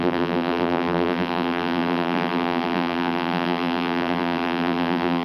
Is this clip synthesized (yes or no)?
yes